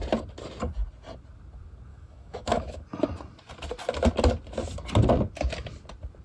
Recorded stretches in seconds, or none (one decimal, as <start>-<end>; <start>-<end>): 0.0-1.9; 2.8-6.2